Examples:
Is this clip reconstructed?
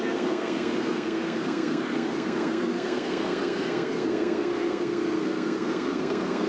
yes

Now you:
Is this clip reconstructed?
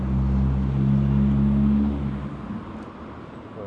no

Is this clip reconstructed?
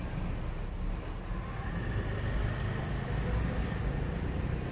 no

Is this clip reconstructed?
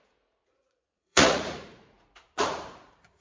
yes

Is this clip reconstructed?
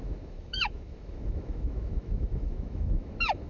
yes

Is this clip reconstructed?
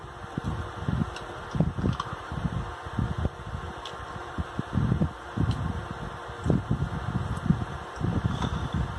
no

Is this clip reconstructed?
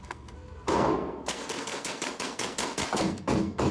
yes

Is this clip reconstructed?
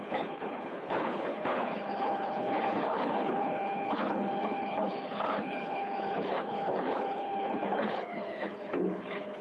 yes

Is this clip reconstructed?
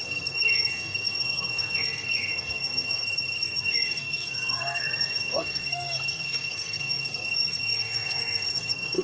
yes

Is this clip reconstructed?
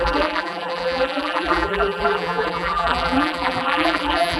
yes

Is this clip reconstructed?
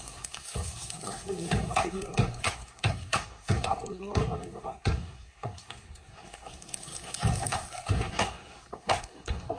yes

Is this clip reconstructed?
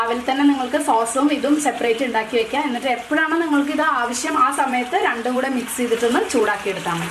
yes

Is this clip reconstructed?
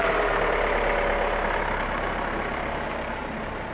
no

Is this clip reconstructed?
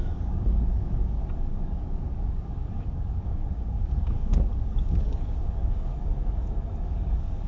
yes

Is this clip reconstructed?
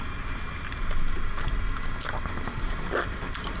no